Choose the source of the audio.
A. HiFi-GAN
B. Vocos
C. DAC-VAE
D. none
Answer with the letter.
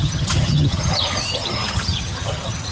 A